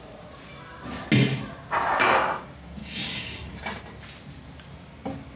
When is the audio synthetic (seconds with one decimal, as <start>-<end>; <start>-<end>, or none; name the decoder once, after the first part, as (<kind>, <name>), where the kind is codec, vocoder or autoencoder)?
2.8-3.5 (codec, DAC)